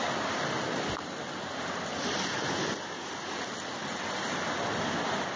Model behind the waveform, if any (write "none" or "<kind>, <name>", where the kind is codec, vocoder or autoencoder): none